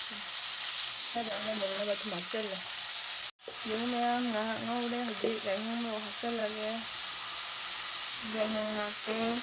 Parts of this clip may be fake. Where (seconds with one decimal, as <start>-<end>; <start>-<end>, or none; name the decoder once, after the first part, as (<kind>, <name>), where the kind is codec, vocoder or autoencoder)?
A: 1.0-1.8 (codec, DAC); 8.1-9.4